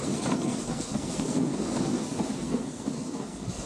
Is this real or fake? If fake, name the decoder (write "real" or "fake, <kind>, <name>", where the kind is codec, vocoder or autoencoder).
fake, codec, SNAC